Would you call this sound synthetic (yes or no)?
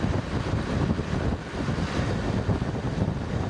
no